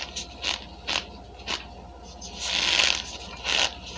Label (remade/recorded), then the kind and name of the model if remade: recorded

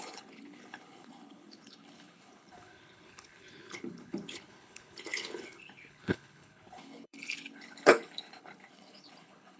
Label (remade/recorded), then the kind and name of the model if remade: remade, codec, HILCodec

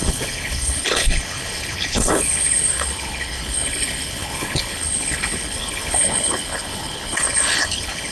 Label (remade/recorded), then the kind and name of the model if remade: remade, codec, HILCodec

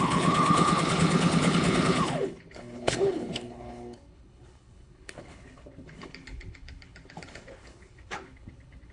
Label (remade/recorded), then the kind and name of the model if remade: remade, codec, HILCodec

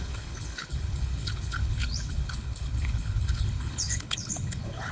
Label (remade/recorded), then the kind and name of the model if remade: remade, codec, HILCodec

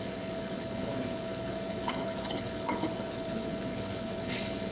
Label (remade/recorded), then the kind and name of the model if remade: remade, codec, HILCodec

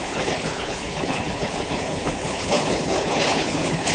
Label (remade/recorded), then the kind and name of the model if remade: remade, codec, HILCodec